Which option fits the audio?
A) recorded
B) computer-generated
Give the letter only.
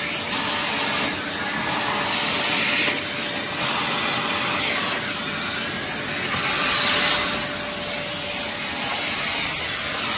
A